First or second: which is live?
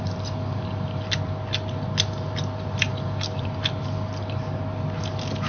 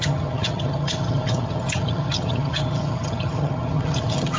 first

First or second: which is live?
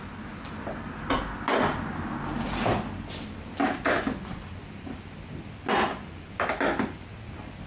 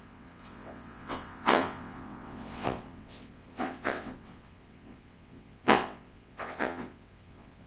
first